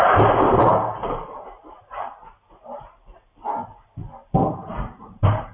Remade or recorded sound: remade